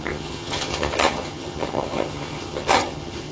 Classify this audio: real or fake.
fake